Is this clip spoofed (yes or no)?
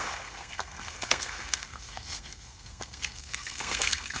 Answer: yes